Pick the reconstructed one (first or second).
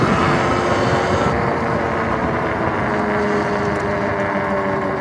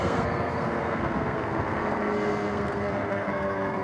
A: second